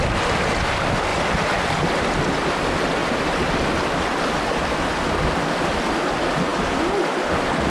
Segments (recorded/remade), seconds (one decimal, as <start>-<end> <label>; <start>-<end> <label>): 0.0-7.7 recorded